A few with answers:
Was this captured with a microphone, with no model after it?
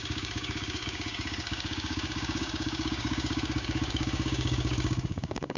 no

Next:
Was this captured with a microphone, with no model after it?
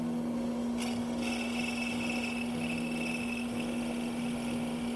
yes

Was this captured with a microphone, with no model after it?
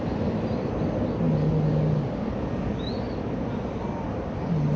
yes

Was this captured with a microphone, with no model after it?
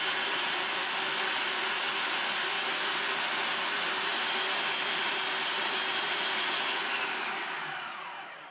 yes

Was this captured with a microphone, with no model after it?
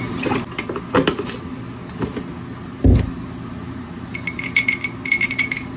yes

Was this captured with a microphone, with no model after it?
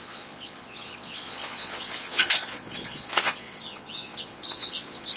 no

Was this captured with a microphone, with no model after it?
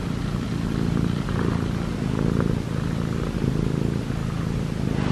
yes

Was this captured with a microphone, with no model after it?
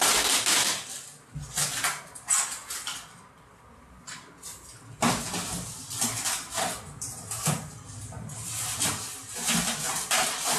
yes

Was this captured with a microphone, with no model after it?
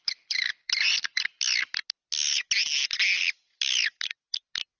yes